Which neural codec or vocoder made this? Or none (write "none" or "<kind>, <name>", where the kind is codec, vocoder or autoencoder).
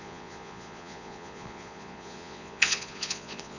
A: vocoder, Vocos